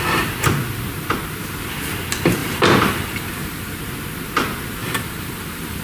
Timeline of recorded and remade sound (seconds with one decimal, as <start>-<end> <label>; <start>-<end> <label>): 0.0-2.4 recorded; 2.4-3.9 remade; 3.9-4.8 recorded; 4.8-5.8 remade